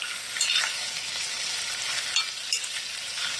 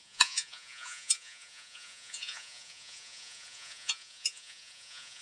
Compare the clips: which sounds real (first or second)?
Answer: first